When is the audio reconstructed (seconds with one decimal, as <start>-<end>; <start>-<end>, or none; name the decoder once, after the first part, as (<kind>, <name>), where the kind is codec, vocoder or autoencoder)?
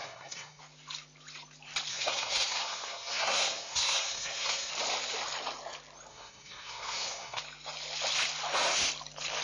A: 0.0-0.6 (codec, SNAC); 1.9-4.7; 6.1-7.4